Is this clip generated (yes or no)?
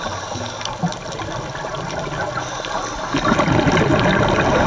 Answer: no